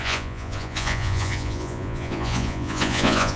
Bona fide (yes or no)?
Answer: no